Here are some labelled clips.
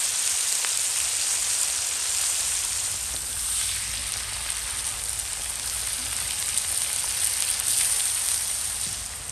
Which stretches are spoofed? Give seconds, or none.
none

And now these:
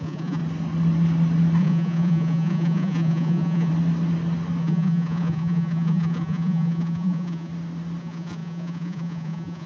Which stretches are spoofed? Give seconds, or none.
0.0-0.4 (vocoder, Vocos); 1.6-3.7; 4.6-7.5; 8.0-9.7

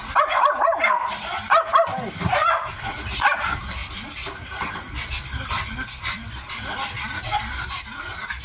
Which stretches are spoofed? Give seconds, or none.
none

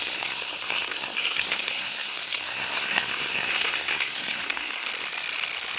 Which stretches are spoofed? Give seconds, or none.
0.0-4.9 (codec, SNAC)

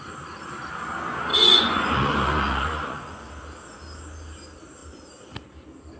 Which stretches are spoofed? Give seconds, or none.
1.3-3.2 (vocoder, Vocos)

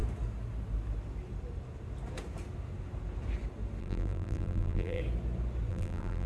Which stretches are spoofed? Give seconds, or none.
3.8-5.0 (vocoder, BigVGAN v2); 5.7-6.3

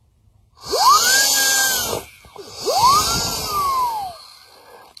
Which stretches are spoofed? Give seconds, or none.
none